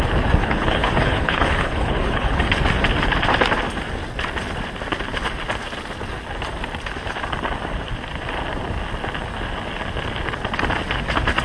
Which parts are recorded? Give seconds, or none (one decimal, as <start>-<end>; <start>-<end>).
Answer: 0.0-0.4; 2.5-11.4